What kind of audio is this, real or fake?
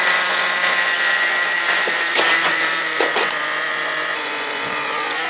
fake